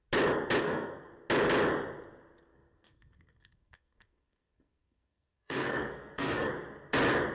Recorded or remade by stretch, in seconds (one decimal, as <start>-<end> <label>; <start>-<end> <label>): 0.0-0.6 recorded; 0.6-1.1 remade; 1.1-2.5 recorded; 2.5-6.5 remade; 6.5-7.3 recorded